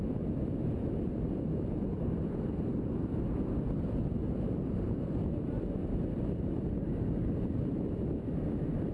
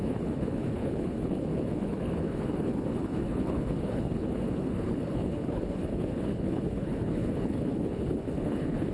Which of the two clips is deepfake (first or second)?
second